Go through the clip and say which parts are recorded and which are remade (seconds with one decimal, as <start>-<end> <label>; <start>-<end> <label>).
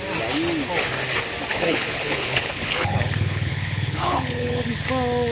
0.0-1.5 recorded; 1.5-4.7 remade; 4.7-5.3 recorded